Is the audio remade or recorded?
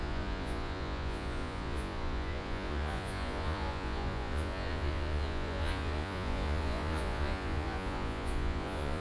remade